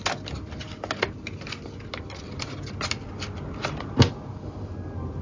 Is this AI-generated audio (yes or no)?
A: no